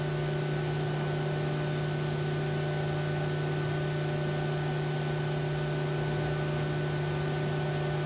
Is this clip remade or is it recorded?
recorded